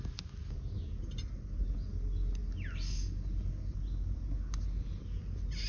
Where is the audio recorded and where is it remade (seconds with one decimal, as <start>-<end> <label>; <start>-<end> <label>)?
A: 0.0-5.7 recorded